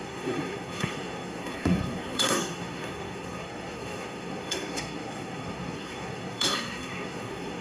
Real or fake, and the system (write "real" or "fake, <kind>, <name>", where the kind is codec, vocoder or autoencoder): fake, codec, SNAC